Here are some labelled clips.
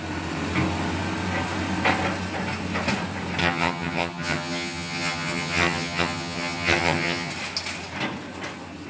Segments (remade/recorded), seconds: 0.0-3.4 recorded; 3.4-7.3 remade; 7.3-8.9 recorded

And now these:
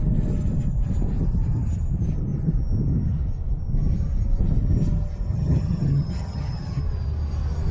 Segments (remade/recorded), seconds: 0.0-5.3 recorded; 5.3-6.8 remade; 6.8-7.7 recorded

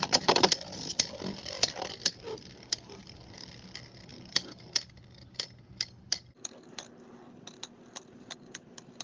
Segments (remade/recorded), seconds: 0.0-9.0 recorded

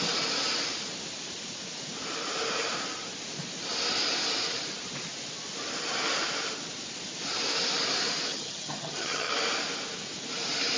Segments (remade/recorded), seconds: 0.0-8.3 recorded; 8.3-9.3 remade; 9.3-10.8 recorded

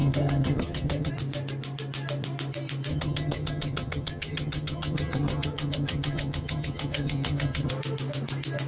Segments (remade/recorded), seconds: 0.0-1.1 remade; 1.1-2.9 recorded; 2.9-7.7 remade; 7.7-8.7 recorded

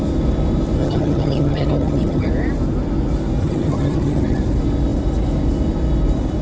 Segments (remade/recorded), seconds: 0.0-0.8 recorded; 0.8-2.3 remade; 2.3-3.4 recorded; 3.4-4.4 remade; 4.4-6.4 recorded

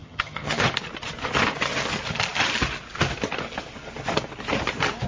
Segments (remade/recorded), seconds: 0.0-0.6 remade; 0.6-5.1 recorded